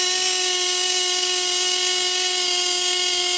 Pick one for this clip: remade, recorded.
remade